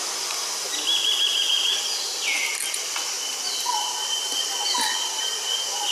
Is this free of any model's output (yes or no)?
yes